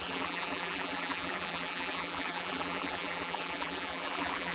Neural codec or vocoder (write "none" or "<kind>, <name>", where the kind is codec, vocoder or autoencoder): vocoder, BigVGAN v2